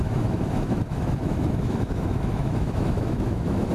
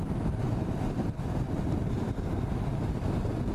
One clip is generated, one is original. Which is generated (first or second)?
first